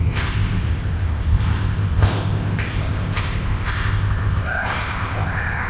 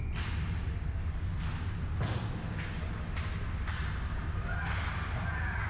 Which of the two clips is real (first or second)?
second